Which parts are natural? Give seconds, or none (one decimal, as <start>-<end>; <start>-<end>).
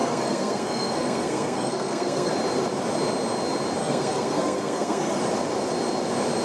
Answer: 2.3-3.8; 5.2-6.4